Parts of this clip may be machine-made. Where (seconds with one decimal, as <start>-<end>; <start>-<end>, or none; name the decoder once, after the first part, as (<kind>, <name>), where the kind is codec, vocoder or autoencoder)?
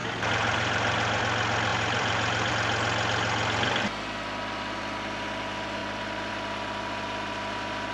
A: 0.0-1.2 (vocoder, BigVGAN v2); 1.7-2.5